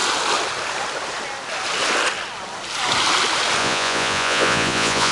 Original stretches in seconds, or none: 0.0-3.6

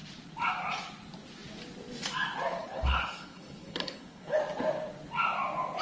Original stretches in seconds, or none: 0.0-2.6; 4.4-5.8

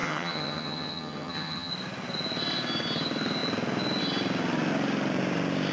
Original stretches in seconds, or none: 1.7-5.7

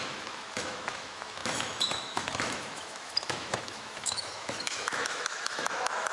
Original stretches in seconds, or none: none

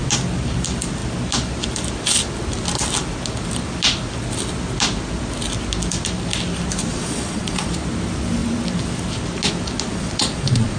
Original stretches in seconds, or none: 0.0-6.9; 7.7-9.9

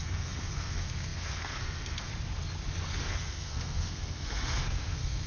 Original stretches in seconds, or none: 2.1-3.0

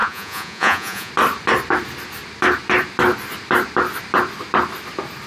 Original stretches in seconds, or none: 1.1-5.3

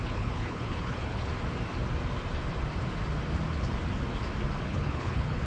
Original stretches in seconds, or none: 1.3-4.6